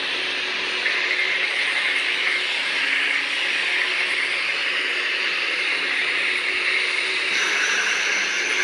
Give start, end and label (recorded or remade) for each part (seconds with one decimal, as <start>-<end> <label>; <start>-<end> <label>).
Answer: 0.0-1.2 recorded; 1.2-2.0 remade; 2.0-4.6 recorded; 4.6-8.2 remade; 8.2-8.6 recorded